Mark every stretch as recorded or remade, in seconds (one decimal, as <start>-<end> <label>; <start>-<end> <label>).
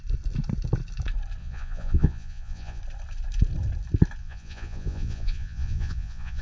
0.0-1.4 recorded; 1.4-2.8 remade; 2.8-4.2 recorded; 4.2-6.4 remade